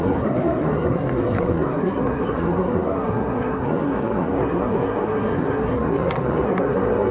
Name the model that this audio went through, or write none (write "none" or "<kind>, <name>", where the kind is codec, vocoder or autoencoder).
codec, SNAC